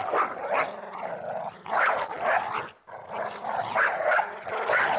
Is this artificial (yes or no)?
no